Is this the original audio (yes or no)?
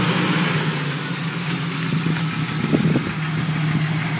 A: yes